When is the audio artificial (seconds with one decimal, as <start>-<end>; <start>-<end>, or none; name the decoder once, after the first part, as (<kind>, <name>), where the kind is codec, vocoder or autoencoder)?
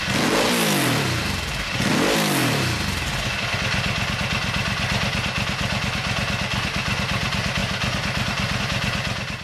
none